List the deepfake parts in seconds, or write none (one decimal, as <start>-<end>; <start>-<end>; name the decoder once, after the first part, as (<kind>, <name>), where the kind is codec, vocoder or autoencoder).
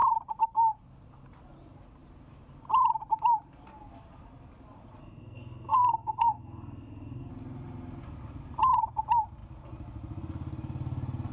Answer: 5.0-7.3 (codec, SNAC)